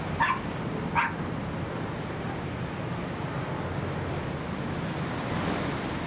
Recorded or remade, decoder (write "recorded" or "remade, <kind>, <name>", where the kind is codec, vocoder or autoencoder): recorded